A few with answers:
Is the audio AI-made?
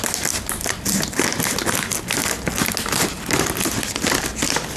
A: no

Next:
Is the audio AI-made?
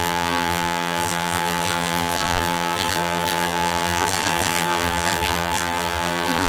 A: yes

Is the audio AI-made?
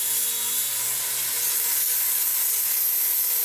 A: yes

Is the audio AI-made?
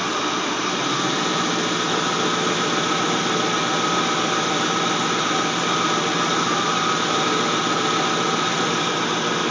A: no